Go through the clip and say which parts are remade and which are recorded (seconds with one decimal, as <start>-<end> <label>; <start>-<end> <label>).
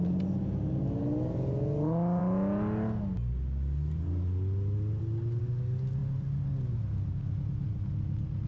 0.0-8.5 recorded